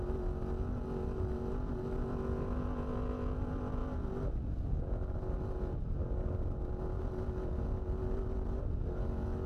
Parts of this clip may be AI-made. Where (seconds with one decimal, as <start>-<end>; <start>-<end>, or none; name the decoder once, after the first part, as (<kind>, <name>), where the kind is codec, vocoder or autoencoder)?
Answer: none